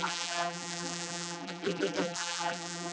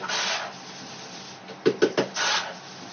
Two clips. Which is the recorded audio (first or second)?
second